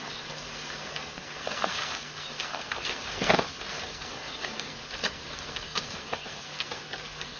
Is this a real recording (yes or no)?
no